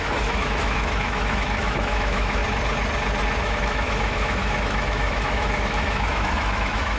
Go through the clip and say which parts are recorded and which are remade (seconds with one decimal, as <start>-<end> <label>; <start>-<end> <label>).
0.0-2.4 remade; 2.4-3.4 recorded; 3.4-7.0 remade